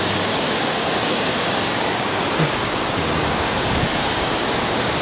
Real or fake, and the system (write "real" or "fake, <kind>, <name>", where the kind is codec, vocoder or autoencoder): fake, codec, DAC